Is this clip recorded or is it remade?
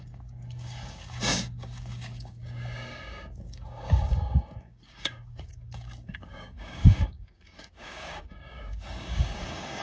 remade